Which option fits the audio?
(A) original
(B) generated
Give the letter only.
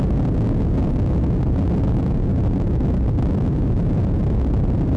A